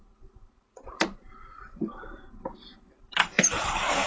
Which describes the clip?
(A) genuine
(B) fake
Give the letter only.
B